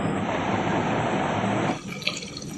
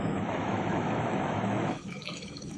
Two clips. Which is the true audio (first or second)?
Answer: first